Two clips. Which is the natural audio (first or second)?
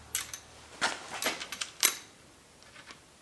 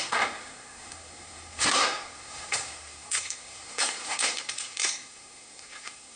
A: first